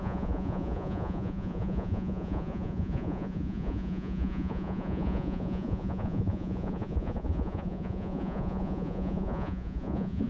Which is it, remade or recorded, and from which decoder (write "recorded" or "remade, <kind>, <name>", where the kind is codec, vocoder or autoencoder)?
remade, vocoder, Vocos